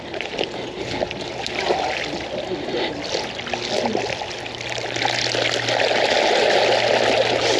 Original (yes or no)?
yes